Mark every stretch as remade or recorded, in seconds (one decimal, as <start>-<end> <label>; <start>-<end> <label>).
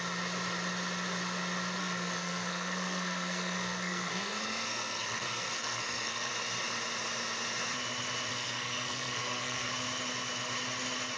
0.0-1.8 recorded; 1.8-6.3 remade; 6.3-8.3 recorded; 8.3-9.7 remade; 9.7-11.2 recorded